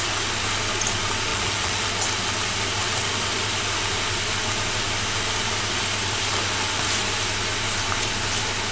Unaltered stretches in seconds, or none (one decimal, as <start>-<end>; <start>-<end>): 0.0-1.3; 1.9-8.7